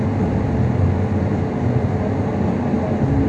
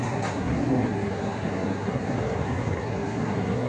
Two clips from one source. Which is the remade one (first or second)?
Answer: second